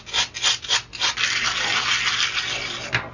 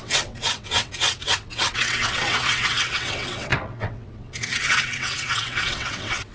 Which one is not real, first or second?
second